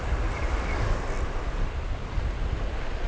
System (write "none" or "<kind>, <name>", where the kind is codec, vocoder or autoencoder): none